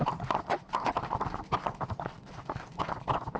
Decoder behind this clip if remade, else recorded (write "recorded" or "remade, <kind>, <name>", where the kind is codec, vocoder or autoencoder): recorded